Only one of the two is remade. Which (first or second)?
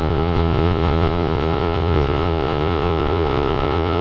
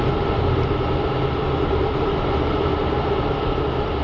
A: first